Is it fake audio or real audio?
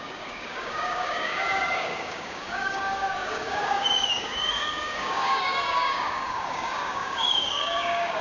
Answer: fake